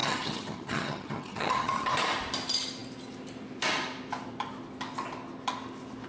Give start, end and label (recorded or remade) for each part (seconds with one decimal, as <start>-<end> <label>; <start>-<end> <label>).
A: 0.0-1.9 remade; 1.9-6.1 recorded